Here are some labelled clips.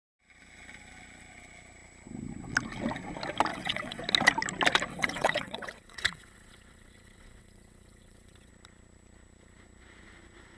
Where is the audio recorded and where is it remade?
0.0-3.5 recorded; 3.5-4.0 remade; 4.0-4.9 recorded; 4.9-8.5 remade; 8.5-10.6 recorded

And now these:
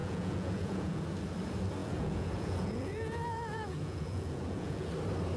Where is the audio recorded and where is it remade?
0.0-1.0 remade; 1.0-1.8 recorded; 1.8-4.9 remade; 4.9-5.4 recorded